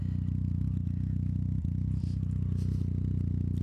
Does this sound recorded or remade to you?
recorded